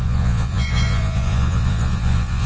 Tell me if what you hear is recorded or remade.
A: remade